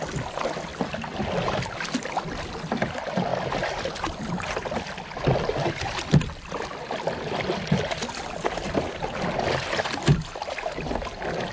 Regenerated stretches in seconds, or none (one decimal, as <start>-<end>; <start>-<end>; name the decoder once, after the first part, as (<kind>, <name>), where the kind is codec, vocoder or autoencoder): none